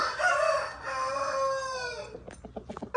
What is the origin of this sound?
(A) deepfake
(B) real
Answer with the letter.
B